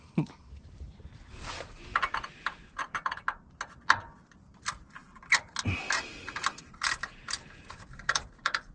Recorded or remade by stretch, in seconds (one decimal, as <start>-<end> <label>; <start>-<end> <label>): 0.0-8.7 recorded